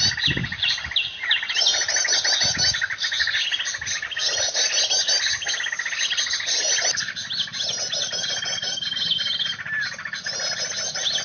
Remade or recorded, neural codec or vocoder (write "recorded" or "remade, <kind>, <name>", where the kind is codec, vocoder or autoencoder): recorded